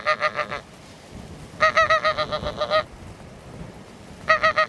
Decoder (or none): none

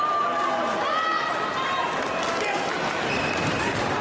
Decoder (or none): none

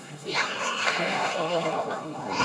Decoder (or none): codec, SNAC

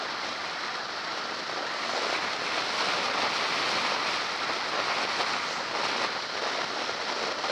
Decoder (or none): none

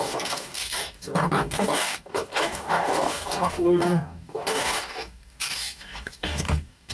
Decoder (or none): codec, DAC